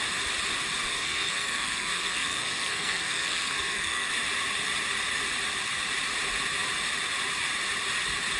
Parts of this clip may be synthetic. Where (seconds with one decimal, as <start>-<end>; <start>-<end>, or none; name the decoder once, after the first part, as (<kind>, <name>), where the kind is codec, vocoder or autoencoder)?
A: 0.9-4.1 (codec, SNAC)